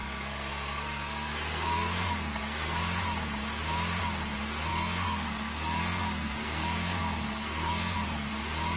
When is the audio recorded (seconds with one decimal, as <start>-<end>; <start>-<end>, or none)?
2.8-4.7; 8.3-8.8